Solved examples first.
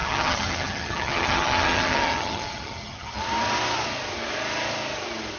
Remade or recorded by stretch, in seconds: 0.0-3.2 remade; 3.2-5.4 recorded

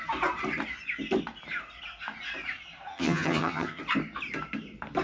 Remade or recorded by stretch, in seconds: 0.0-2.9 recorded; 2.9-3.8 remade; 3.8-5.0 recorded

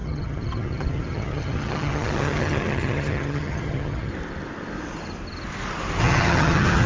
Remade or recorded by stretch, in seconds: 0.0-4.1 remade; 4.1-6.0 recorded; 6.0-6.9 remade

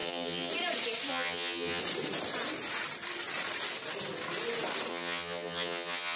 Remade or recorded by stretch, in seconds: 0.0-0.5 remade; 0.5-1.1 recorded; 1.1-1.8 remade; 1.8-4.9 recorded; 4.9-6.2 remade

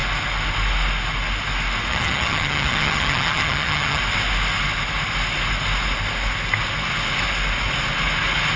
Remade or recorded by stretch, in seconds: 0.0-1.9 recorded; 1.9-4.0 remade; 4.0-8.6 recorded

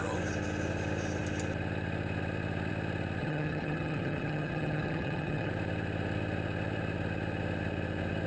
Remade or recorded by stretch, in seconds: 0.0-3.2 recorded; 3.2-5.5 remade; 5.5-8.3 recorded